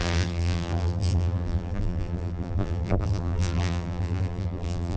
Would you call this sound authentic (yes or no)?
no